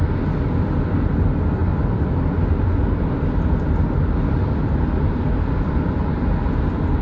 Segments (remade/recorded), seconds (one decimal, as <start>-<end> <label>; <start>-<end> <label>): 0.0-7.0 recorded